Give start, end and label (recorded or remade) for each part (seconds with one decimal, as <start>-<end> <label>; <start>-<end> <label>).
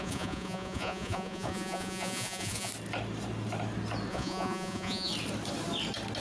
0.0-2.7 remade; 2.7-4.1 recorded; 4.1-5.1 remade; 5.1-6.2 recorded